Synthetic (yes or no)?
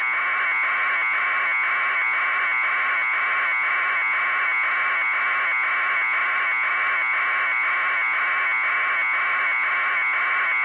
no